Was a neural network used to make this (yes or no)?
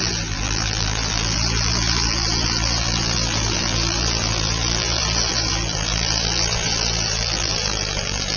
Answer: yes